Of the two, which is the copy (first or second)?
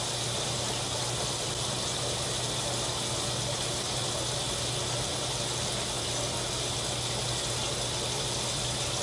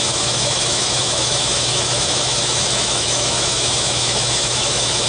second